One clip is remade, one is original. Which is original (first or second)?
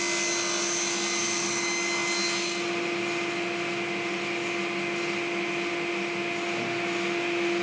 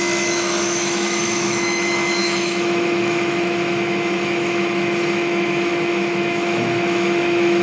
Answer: first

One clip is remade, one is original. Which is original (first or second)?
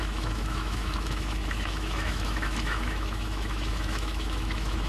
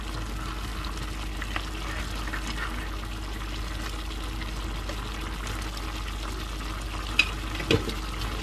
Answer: second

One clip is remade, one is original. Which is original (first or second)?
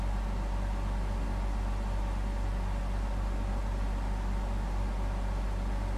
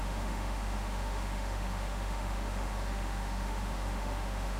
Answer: first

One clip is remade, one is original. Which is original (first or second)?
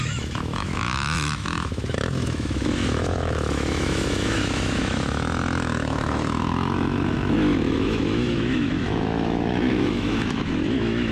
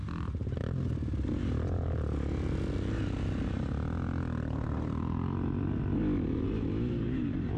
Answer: second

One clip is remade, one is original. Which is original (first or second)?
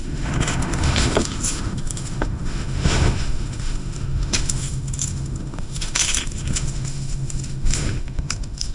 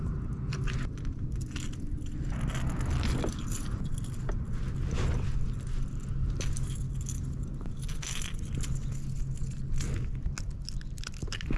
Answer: second